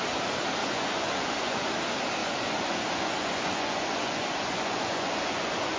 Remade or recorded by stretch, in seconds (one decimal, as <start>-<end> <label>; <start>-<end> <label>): 0.0-0.6 recorded; 0.6-1.7 remade; 1.7-2.2 recorded; 2.2-5.8 remade